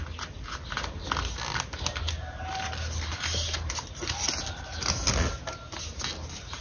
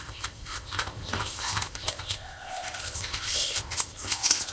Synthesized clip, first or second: second